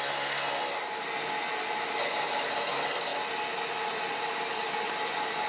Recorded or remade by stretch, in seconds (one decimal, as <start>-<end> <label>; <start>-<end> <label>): 0.0-5.5 recorded